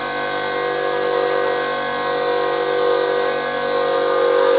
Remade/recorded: recorded